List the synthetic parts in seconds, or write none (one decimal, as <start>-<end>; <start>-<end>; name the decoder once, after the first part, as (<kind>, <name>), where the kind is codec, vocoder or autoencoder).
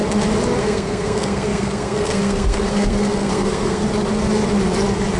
0.6-3.8 (codec, SNAC)